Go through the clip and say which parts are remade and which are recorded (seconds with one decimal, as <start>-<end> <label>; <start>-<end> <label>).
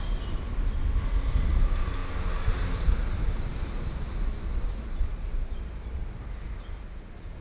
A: 0.0-7.4 recorded